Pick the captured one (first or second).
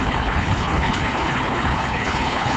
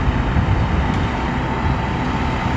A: second